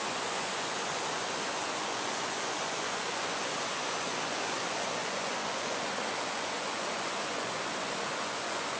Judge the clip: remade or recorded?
remade